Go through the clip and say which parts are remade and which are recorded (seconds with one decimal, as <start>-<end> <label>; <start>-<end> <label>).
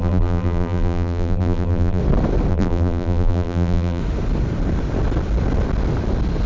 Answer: 0.0-2.0 remade; 2.0-2.5 recorded; 2.5-4.0 remade; 4.0-6.5 recorded